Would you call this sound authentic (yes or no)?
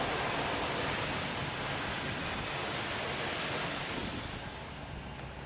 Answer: yes